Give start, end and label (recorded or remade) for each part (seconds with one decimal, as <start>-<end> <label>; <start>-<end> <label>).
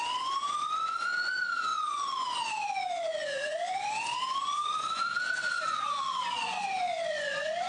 0.0-7.7 remade